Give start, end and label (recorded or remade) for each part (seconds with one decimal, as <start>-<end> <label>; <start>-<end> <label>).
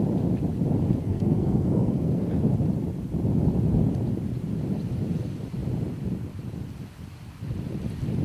0.0-1.0 recorded; 1.0-2.4 remade; 2.4-8.2 recorded